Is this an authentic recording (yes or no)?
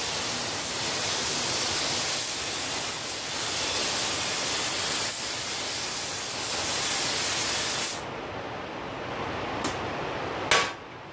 yes